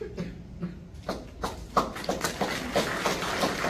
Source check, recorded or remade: recorded